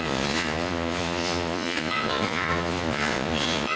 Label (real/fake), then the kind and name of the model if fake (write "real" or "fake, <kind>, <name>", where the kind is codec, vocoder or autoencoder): fake, vocoder, Vocos